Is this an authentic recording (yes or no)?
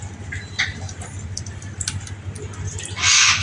yes